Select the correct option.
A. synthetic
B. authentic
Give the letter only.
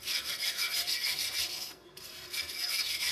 A